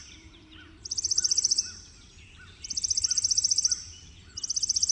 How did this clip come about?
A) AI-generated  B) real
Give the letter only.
A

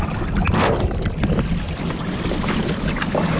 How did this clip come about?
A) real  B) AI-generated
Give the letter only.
A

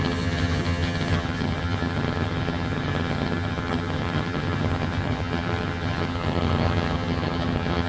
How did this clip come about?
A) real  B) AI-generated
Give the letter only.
B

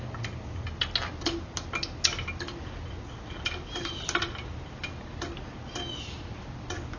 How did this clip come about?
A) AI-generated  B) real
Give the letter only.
B